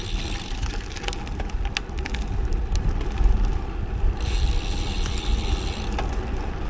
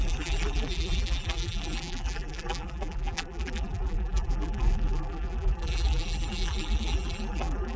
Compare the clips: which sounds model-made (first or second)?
second